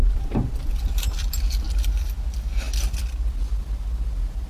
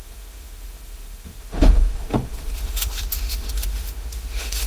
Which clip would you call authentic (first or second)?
first